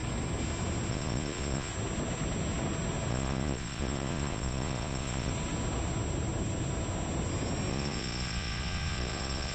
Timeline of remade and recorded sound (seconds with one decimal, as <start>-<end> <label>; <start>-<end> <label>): 0.0-0.9 recorded; 0.9-1.7 remade; 1.7-3.1 recorded; 3.1-5.3 remade; 5.3-7.7 recorded; 7.7-9.5 remade